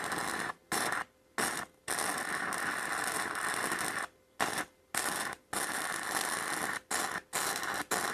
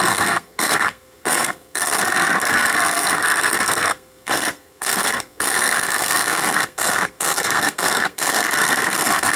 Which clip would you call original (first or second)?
first